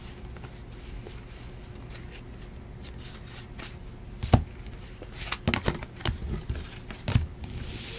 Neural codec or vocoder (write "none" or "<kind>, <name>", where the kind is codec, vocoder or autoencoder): none